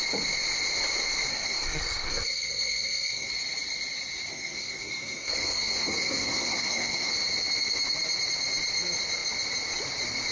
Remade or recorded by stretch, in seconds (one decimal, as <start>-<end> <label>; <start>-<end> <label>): 0.0-1.3 recorded; 1.3-3.3 remade; 3.3-4.3 recorded; 4.3-7.1 remade; 7.1-10.3 recorded